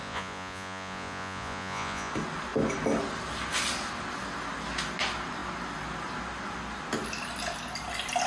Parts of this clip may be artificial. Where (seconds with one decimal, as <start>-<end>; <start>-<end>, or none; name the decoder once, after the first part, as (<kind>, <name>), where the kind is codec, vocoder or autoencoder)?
0.0-2.1 (vocoder, Vocos)